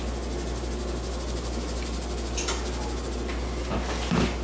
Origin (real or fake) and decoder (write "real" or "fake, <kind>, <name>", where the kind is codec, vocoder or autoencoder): real